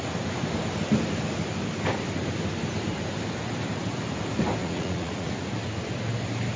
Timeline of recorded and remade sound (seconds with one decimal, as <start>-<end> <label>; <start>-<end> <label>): 0.0-4.6 recorded; 4.6-5.3 remade; 5.3-6.6 recorded